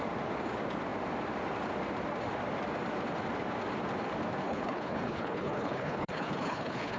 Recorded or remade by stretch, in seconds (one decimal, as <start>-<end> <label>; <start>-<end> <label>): 0.0-4.4 recorded; 4.4-7.0 remade